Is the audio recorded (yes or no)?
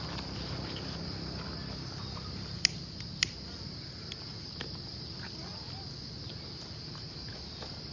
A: yes